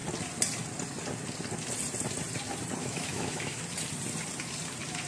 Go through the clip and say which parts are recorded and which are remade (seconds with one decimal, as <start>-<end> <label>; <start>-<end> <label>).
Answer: 0.0-2.8 recorded; 2.8-3.6 remade; 3.6-5.1 recorded